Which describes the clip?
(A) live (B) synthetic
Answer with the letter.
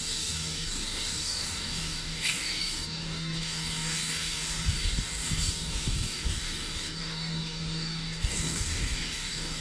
B